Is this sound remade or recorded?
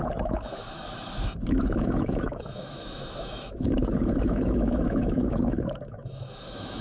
remade